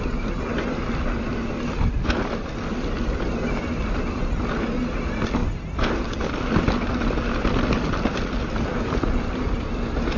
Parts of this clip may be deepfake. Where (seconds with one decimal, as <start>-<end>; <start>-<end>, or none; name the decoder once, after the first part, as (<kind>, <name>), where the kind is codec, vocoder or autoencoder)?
none